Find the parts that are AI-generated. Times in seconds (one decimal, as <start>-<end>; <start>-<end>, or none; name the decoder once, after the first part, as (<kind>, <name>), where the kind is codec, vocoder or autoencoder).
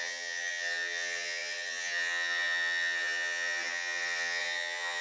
0.0-5.0 (vocoder, HiFi-GAN)